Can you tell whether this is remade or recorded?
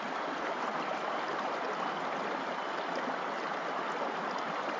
recorded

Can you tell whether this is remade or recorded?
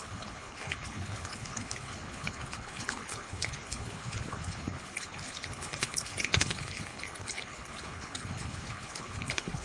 remade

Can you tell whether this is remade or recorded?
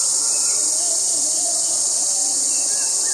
recorded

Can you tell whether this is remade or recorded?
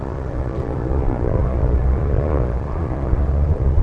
remade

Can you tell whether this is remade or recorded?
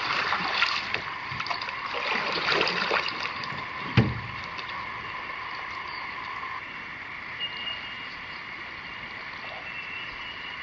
recorded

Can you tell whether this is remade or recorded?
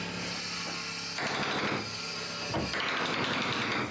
recorded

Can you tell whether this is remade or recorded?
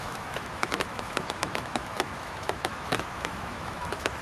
remade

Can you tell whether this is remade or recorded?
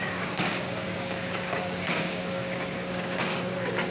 remade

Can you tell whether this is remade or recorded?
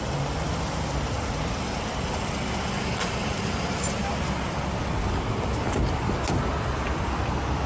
recorded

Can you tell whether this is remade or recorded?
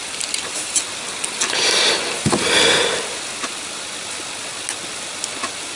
recorded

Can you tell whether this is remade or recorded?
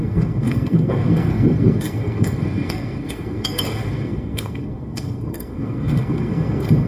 remade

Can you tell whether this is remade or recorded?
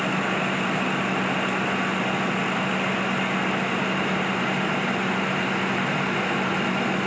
recorded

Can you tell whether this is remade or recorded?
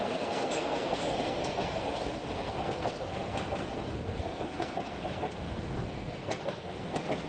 remade